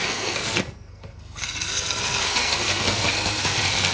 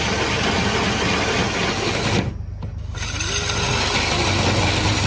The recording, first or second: second